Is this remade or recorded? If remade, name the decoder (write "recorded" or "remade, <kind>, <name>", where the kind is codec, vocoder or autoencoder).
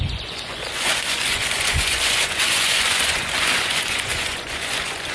remade, vocoder, Vocos